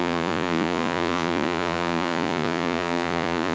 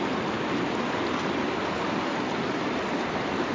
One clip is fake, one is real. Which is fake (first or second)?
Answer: first